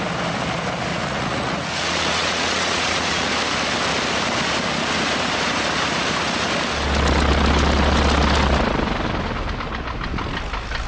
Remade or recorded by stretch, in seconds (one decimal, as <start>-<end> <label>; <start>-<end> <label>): 0.0-0.9 recorded; 0.9-3.3 remade; 3.3-10.9 recorded